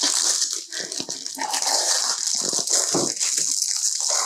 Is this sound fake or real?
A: real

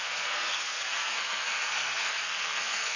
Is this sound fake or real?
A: fake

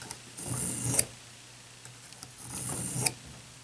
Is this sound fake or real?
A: real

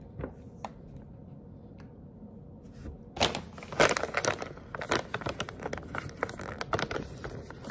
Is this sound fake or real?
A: real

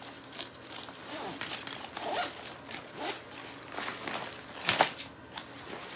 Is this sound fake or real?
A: real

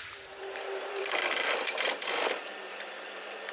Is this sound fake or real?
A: fake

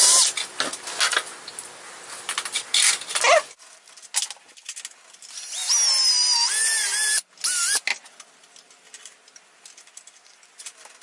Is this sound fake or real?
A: real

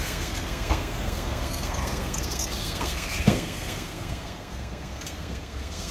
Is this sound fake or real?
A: fake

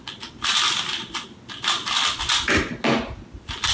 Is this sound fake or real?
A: real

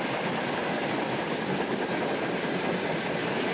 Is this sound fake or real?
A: real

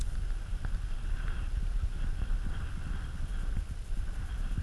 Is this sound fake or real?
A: real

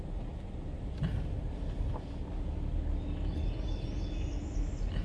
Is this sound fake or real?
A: real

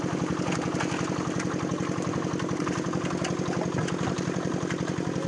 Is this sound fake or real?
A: real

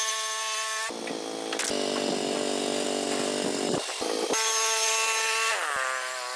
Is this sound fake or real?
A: real